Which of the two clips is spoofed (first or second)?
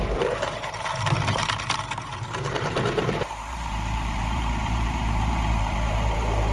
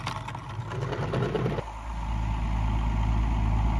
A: first